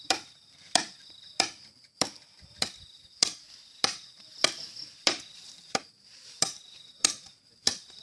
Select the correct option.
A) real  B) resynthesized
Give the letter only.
B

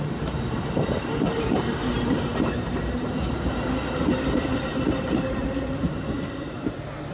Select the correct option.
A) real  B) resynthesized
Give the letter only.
B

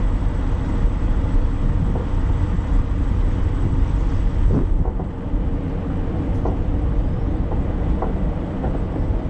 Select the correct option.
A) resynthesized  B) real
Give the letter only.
B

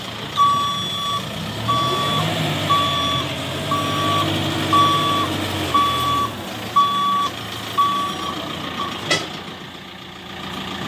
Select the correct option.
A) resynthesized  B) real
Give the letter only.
B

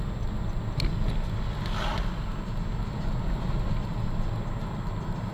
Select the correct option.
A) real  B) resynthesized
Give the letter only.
A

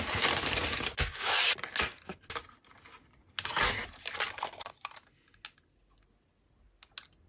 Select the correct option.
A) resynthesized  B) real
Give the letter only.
B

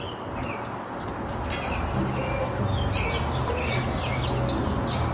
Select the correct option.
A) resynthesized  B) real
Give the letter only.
B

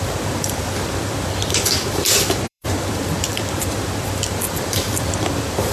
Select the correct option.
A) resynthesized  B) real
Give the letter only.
A